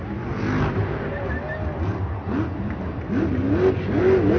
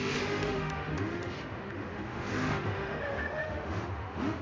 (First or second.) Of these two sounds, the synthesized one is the second